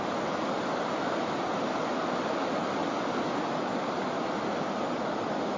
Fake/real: real